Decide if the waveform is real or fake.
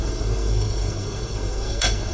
fake